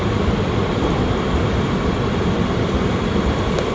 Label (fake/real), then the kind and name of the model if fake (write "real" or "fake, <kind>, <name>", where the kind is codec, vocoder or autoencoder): fake, vocoder, BigVGAN v2